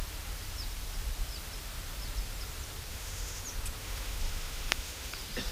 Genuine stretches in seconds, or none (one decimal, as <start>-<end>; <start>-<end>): 0.0-2.9; 3.4-3.8; 5.1-5.5

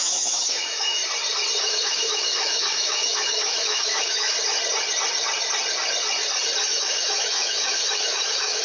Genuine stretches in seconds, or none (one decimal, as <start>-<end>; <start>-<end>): 1.0-1.6; 4.3-6.6